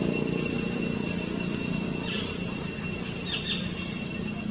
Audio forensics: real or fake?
real